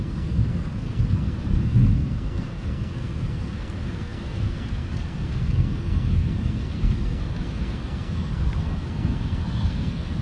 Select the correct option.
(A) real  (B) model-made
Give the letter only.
B